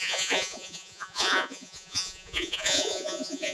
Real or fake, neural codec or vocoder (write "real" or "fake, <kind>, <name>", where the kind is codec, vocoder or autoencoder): fake, vocoder, Vocos